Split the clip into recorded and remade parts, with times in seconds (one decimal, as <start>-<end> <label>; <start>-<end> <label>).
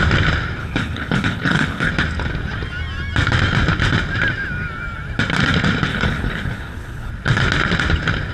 0.0-0.6 recorded; 0.6-1.9 remade; 1.9-5.9 recorded; 5.9-7.1 remade; 7.1-8.3 recorded